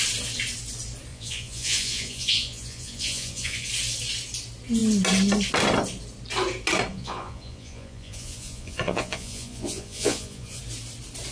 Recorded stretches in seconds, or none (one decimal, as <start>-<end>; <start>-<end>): 0.0-1.1; 3.7-6.9; 10.6-11.3